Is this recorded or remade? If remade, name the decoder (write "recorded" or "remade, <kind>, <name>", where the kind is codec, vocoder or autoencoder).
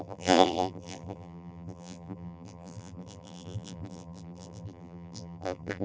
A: remade, vocoder, BigVGAN v2